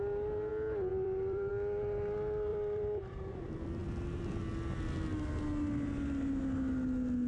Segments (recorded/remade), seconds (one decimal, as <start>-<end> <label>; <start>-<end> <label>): 0.0-0.9 recorded; 0.9-1.5 remade; 1.5-2.5 recorded; 2.5-3.4 remade; 3.4-7.3 recorded

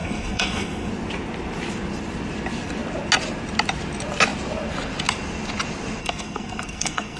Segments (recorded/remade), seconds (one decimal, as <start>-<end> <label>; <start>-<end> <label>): 0.0-0.9 remade; 0.9-6.0 recorded; 6.0-7.2 remade